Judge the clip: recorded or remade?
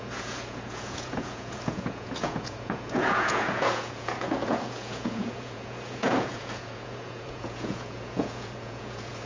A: remade